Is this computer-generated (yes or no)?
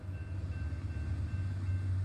no